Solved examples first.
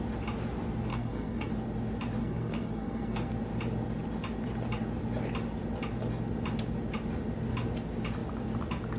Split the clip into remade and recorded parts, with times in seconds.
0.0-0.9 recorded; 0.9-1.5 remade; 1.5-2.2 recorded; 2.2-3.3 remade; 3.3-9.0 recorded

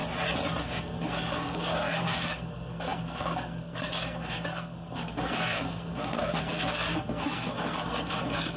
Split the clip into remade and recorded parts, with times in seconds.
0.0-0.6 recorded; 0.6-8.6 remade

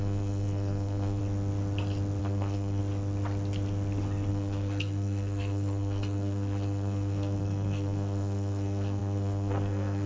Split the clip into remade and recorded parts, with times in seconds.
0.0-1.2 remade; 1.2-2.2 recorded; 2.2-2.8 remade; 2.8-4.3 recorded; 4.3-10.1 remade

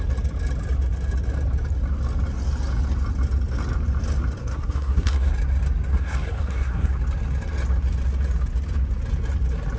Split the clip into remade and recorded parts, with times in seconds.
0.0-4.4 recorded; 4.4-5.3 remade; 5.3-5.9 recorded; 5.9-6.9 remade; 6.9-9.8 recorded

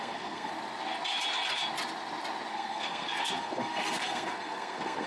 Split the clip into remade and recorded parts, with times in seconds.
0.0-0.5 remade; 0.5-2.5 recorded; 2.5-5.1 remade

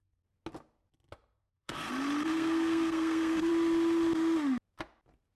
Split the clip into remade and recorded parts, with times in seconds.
0.0-1.4 recorded; 1.4-1.9 remade; 1.9-2.3 recorded; 2.3-3.5 remade; 3.5-5.4 recorded

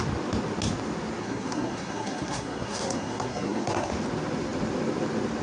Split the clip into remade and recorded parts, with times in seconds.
0.0-1.2 recorded; 1.2-3.9 remade; 3.9-5.4 recorded

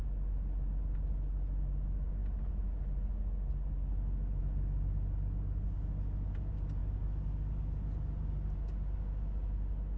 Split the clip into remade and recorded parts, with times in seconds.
0.0-10.0 recorded